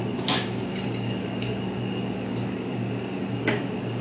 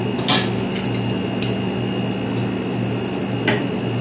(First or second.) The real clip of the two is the second